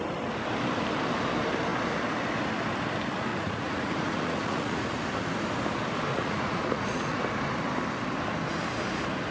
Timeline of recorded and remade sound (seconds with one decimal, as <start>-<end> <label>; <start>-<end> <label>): 0.0-3.3 recorded; 3.3-4.9 remade; 4.9-6.1 recorded; 6.1-7.2 remade; 7.2-9.3 recorded